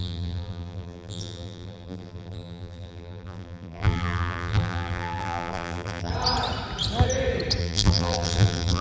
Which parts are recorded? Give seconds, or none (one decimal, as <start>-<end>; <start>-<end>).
6.1-7.6